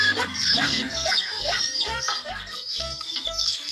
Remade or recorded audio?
remade